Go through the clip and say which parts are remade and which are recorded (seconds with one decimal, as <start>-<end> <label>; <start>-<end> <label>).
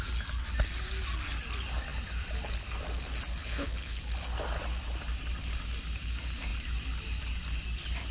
0.0-3.4 recorded; 3.4-4.0 remade; 4.0-8.1 recorded